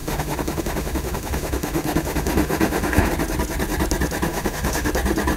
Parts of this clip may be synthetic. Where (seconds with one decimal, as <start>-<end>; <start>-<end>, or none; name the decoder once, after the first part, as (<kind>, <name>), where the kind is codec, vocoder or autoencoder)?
0.0-3.1 (autoencoder, DAC-VAE); 4.3-4.9